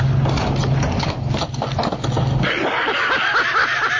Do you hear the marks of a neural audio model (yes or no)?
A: no